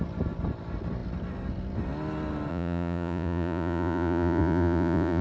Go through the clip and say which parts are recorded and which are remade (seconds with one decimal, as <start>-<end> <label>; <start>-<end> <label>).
0.0-2.5 recorded; 2.5-5.2 remade